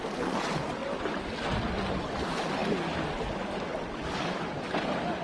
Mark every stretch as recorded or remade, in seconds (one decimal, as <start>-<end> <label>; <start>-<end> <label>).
0.0-5.2 recorded